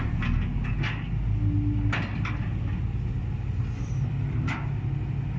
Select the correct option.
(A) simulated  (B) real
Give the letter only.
B